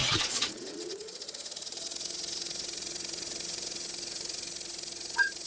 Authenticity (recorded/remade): remade